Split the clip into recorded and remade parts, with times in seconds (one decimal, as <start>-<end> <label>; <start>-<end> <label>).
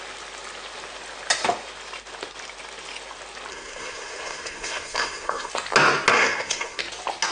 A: 0.0-3.5 recorded; 3.5-5.5 remade; 5.5-6.1 recorded; 6.1-6.8 remade; 6.8-7.3 recorded